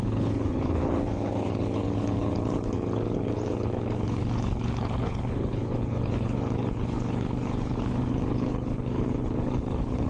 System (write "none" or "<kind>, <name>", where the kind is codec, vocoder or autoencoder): codec, HILCodec